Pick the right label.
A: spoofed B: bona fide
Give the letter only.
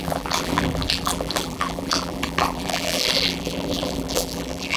A